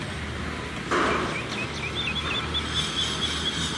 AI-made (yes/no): no